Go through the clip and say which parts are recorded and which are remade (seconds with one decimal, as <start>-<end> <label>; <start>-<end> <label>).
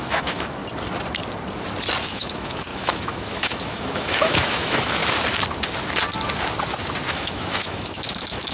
0.0-0.6 remade; 0.6-2.0 recorded; 2.0-5.0 remade; 5.0-7.1 recorded; 7.1-8.5 remade